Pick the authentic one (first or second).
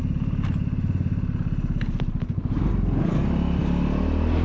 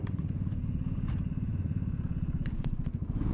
first